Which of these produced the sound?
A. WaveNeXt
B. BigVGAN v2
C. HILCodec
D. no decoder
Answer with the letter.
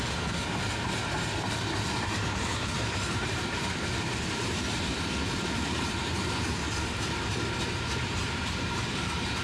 B